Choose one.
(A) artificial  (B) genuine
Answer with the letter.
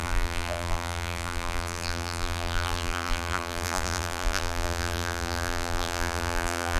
A